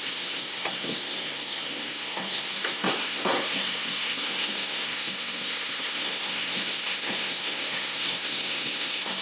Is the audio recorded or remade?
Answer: remade